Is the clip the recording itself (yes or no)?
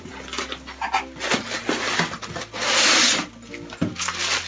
yes